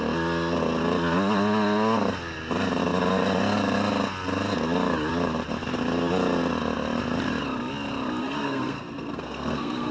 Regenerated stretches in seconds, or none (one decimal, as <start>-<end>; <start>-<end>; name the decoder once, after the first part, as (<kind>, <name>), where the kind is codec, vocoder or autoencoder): 8.2-9.9 (codec, SNAC)